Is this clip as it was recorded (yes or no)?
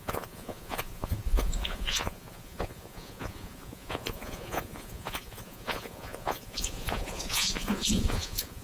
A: no